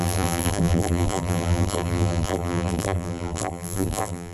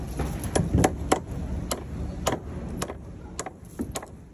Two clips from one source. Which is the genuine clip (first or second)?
second